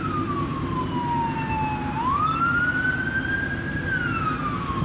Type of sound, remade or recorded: recorded